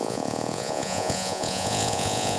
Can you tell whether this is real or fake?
fake